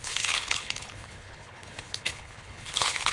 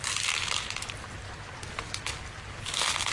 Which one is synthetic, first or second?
first